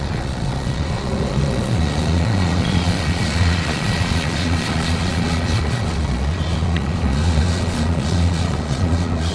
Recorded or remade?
remade